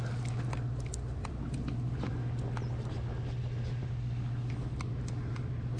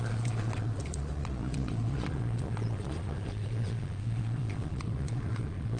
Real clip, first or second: first